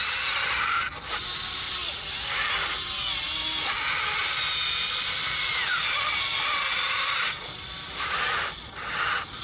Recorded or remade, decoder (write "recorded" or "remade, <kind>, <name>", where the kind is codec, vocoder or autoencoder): recorded